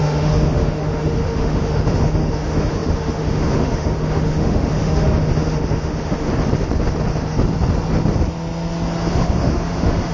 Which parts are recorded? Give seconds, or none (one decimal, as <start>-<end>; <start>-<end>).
6.3-9.1

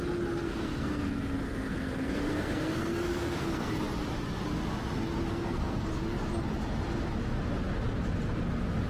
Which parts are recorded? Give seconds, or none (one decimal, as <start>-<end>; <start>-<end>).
0.0-0.4; 3.7-5.3; 5.8-8.9

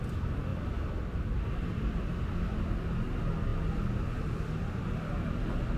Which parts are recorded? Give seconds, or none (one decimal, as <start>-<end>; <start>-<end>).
0.0-5.8

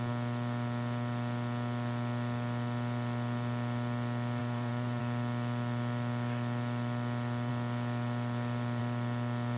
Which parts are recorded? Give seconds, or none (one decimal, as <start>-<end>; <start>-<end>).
0.0-4.4; 5.0-9.6

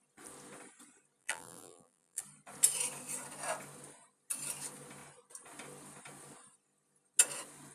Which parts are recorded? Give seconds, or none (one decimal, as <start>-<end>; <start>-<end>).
0.0-1.2; 2.2-7.7

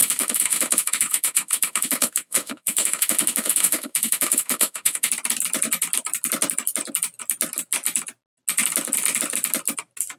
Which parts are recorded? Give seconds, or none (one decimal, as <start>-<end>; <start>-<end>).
5.1-10.2

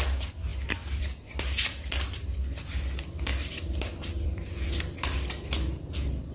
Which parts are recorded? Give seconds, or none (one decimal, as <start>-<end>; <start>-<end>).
0.0-1.7; 2.2-3.3; 5.0-6.3